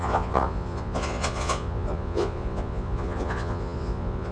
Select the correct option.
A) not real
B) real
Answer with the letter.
A